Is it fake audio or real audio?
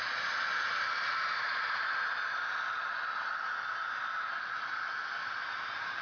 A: real